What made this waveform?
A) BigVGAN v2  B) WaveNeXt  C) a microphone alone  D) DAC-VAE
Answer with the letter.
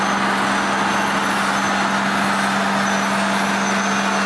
C